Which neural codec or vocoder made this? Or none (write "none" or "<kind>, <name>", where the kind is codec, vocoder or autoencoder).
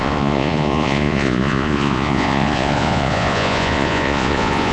vocoder, Vocos